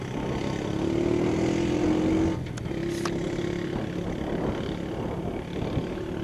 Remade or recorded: recorded